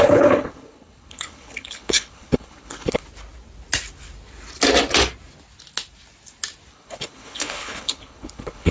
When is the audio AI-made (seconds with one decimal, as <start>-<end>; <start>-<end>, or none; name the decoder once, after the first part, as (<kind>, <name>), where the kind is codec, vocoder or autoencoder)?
0.0-3.0 (codec, HILCodec); 6.7-8.7